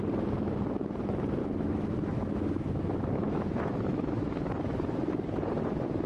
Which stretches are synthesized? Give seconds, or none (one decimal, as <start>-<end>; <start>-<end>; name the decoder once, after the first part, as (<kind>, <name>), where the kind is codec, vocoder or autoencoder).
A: 1.4-5.1 (autoencoder, DAC-VAE)